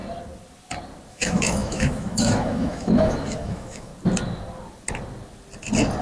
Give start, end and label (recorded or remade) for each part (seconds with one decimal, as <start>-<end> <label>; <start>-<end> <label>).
0.0-1.1 recorded; 1.1-3.9 remade; 3.9-6.0 recorded